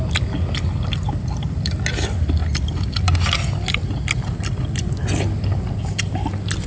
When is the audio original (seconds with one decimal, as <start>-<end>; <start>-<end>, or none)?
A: 0.0-6.7